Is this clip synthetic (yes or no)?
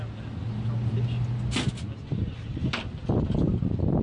no